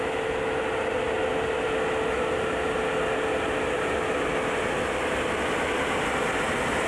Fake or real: real